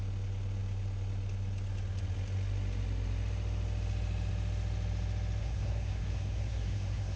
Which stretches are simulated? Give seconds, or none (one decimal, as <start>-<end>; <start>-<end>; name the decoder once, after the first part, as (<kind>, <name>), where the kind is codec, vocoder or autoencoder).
5.4-7.2 (codec, SNAC)